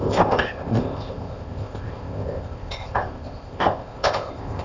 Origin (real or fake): fake